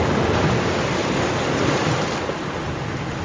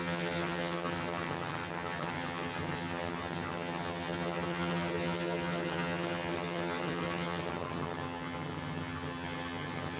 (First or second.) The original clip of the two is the first